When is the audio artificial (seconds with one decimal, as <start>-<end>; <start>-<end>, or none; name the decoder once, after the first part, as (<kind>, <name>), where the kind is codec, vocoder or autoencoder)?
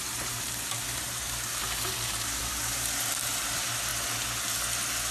0.0-1.6 (vocoder, BigVGAN v2); 2.4-3.9